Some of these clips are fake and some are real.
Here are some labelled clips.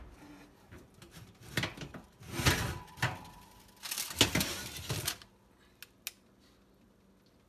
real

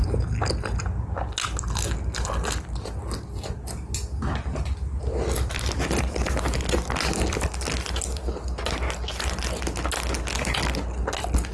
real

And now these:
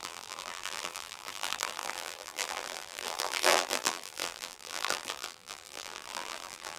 fake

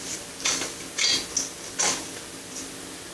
real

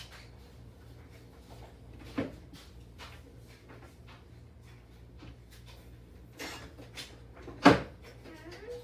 real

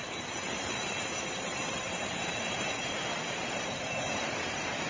fake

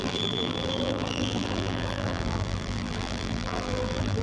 fake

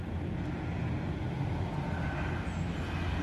real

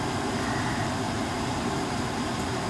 real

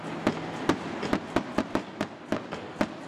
real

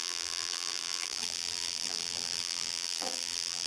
fake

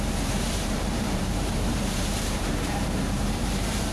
fake